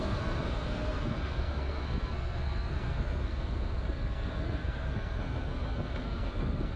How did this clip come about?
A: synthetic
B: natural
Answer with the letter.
A